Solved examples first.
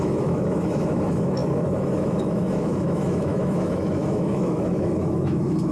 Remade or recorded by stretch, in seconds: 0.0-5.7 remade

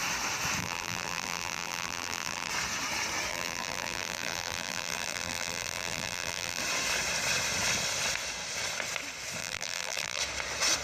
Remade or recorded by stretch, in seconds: 0.0-0.6 recorded; 0.6-2.5 remade; 2.5-3.3 recorded; 3.3-6.6 remade; 6.6-9.4 recorded; 9.4-10.2 remade; 10.2-10.8 recorded

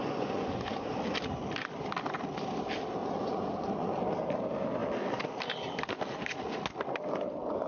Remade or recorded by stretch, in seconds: 0.0-0.9 remade; 0.9-3.0 recorded; 3.0-3.9 remade; 3.9-7.7 recorded

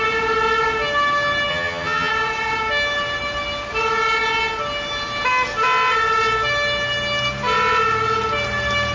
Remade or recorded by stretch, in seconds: 0.0-1.5 recorded; 1.5-2.1 remade; 2.1-8.9 recorded